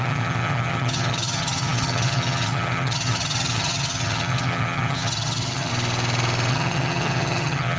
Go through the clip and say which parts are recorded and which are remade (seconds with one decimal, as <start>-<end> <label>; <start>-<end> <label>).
0.0-5.7 remade; 5.7-6.5 recorded; 6.5-7.8 remade